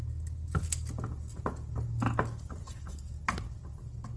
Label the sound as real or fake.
real